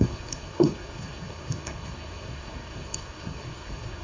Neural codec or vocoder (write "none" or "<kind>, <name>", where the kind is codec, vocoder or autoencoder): codec, SNAC